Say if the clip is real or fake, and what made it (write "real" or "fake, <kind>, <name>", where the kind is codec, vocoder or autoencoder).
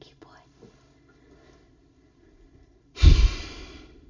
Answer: real